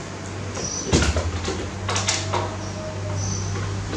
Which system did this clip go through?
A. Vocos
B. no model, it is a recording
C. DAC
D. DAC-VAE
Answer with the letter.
B